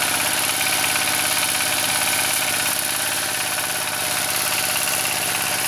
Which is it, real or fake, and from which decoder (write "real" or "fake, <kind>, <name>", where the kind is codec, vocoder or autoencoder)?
fake, vocoder, BigVGAN v2